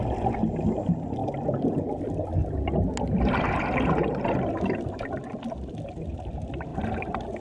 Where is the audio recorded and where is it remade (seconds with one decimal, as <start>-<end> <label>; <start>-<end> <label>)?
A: 0.0-1.2 recorded; 1.2-2.0 remade; 2.0-6.7 recorded; 6.7-7.4 remade